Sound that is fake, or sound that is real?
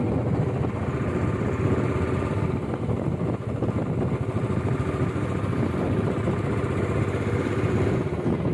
real